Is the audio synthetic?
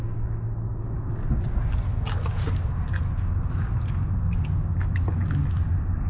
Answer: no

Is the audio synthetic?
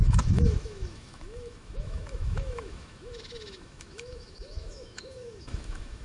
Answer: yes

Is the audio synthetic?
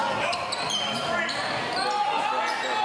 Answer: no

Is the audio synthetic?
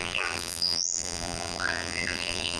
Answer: yes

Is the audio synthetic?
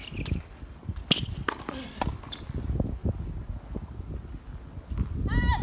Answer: no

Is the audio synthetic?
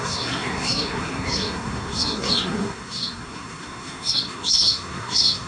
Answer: yes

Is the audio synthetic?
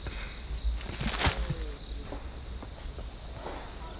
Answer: no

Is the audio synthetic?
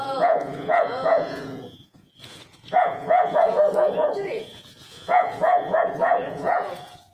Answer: yes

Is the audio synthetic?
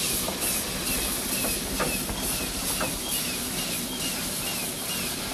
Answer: no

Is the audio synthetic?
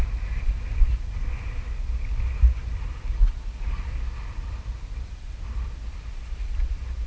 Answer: no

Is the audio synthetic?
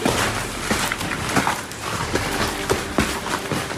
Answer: no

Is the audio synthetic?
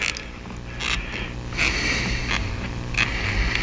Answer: no